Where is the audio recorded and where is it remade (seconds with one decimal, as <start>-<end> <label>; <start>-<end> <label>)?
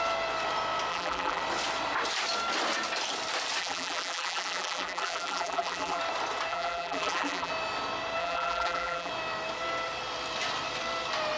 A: 0.0-0.9 recorded; 0.9-1.4 remade; 1.4-3.6 recorded; 3.6-6.0 remade; 6.0-6.5 recorded; 6.5-7.5 remade; 7.5-8.2 recorded; 8.2-9.1 remade; 9.1-11.4 recorded